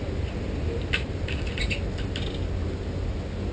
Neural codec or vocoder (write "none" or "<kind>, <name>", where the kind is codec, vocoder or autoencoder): none